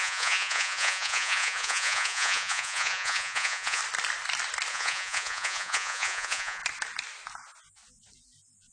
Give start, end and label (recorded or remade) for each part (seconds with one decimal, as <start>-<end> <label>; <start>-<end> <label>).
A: 0.0-3.8 remade; 3.8-4.7 recorded; 4.7-6.6 remade; 6.6-8.7 recorded